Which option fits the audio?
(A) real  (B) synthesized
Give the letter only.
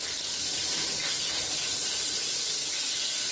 A